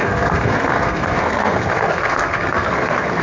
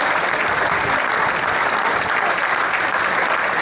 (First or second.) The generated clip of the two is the first